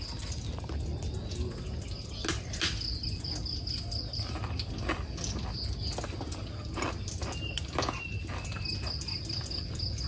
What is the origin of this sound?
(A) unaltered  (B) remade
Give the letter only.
A